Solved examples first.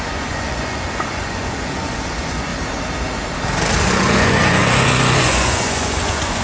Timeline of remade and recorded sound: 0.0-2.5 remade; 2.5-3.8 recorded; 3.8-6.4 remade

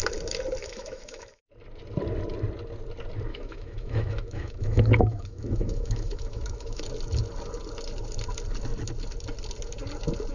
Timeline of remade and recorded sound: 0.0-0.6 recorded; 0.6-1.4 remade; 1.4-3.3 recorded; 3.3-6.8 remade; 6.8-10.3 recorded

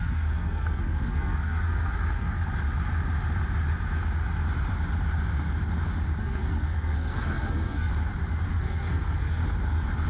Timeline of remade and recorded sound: 0.0-2.4 remade; 2.4-6.2 recorded; 6.2-7.9 remade; 7.9-8.5 recorded; 8.5-9.4 remade; 9.4-10.1 recorded

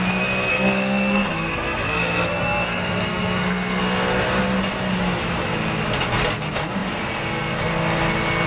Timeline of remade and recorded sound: 0.0-0.5 recorded; 0.5-3.8 remade; 3.8-8.5 recorded